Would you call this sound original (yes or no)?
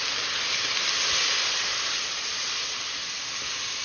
yes